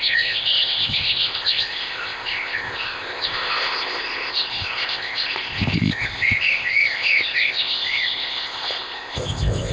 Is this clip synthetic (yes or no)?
yes